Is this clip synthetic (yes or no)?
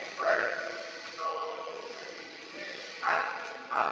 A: yes